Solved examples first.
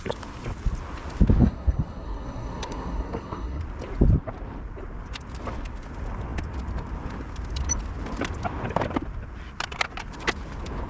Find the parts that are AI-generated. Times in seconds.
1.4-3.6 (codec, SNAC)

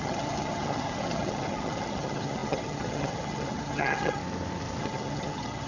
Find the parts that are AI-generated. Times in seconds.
0.0-4.2 (vocoder, HiFi-GAN); 4.8-5.7

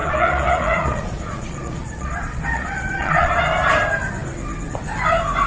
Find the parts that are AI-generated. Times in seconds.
0.0-3.3 (vocoder, Vocos)

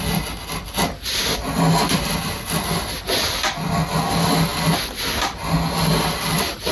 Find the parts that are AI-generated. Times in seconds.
none

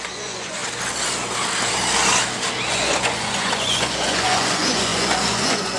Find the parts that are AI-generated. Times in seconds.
0.0-0.6 (vocoder, Vocos); 2.7-5.8

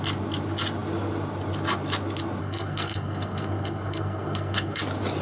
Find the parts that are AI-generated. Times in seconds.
2.4-4.8 (codec, SNAC)

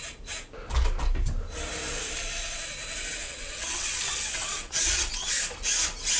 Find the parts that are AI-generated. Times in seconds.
3.2-5.3 (vocoder, WaveNeXt)